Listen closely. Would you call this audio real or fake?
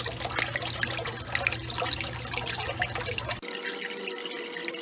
real